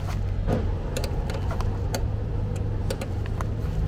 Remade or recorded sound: recorded